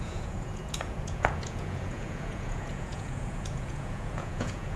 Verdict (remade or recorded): remade